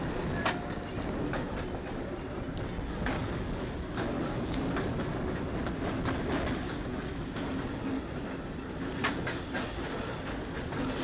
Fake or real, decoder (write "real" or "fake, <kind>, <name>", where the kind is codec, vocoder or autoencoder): real